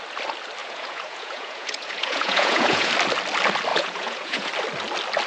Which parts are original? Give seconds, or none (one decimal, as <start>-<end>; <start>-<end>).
0.0-0.6; 2.9-3.7; 4.5-5.3